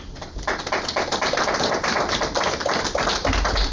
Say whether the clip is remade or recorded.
recorded